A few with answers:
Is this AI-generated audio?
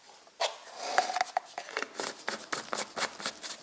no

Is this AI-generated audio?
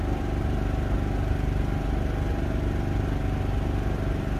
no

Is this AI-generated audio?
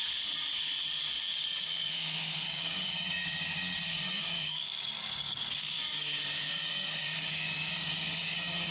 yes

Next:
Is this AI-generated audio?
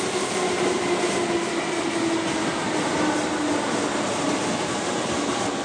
no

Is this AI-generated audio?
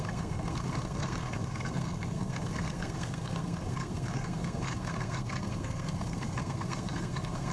yes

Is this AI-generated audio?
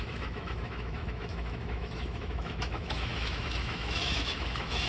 yes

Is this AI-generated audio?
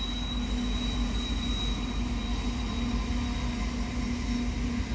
no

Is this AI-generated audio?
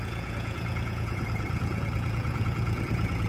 yes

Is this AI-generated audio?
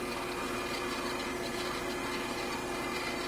no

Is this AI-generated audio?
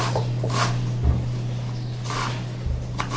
no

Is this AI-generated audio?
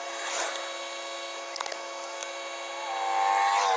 no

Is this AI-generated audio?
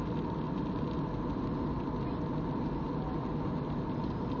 no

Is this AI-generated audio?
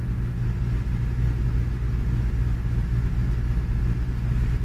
no